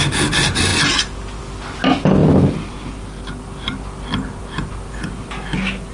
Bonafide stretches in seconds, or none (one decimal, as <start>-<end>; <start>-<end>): 0.0-0.7; 1.4-5.9